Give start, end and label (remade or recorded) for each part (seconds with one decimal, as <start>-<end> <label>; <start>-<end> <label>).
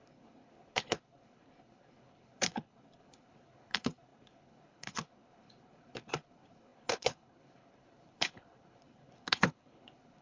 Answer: 0.0-10.2 remade